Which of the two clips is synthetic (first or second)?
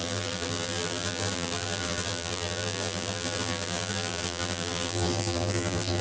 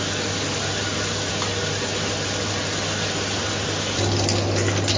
first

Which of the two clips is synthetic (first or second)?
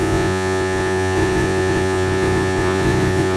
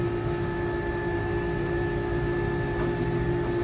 first